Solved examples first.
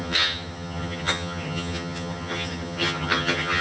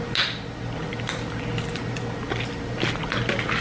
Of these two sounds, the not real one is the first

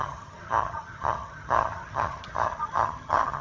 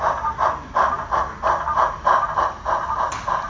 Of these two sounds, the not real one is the first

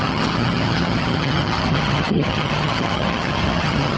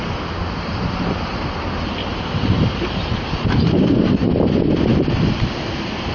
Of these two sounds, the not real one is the first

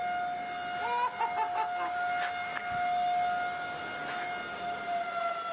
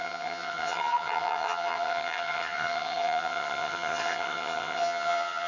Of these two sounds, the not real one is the second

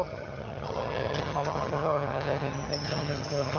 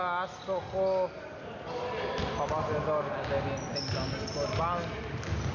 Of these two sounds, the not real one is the first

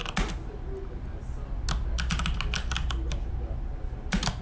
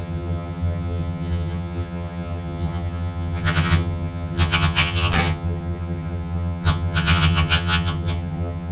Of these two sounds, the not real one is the second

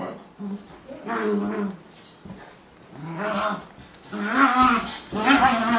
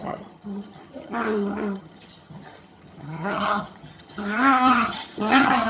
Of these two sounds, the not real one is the second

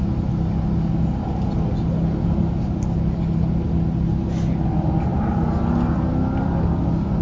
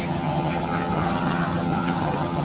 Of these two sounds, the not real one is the second